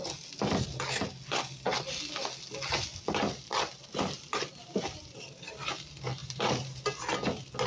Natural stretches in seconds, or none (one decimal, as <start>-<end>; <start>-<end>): 0.0-6.2; 6.8-7.7